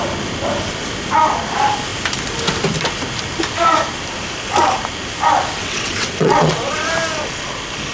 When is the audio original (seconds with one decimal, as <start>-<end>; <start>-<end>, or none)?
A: 0.0-5.6; 6.9-7.9